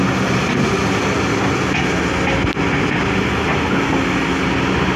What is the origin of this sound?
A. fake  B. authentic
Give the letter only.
B